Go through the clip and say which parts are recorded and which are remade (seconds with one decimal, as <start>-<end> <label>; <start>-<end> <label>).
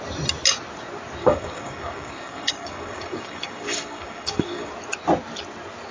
0.0-1.2 recorded; 1.2-4.7 remade; 4.7-5.9 recorded